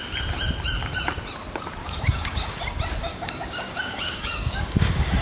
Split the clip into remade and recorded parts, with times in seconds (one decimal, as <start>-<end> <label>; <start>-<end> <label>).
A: 0.0-1.8 recorded; 1.8-2.6 remade; 2.6-3.0 recorded; 3.0-5.2 remade